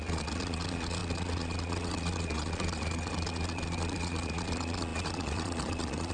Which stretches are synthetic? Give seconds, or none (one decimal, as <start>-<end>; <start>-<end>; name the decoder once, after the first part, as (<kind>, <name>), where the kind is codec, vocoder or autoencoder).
0.0-6.1 (vocoder, Vocos)